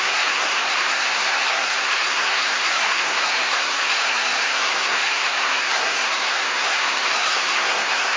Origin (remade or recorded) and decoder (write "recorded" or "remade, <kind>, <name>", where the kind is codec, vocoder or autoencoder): remade, codec, SNAC